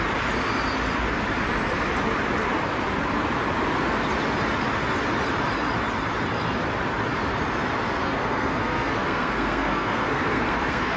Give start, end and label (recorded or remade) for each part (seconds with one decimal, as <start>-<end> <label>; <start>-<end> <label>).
0.0-8.0 recorded; 8.0-11.0 remade